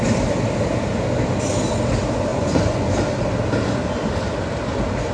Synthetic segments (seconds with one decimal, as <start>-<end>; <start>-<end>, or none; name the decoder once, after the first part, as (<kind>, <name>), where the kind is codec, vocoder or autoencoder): 2.3-2.9 (vocoder, Vocos)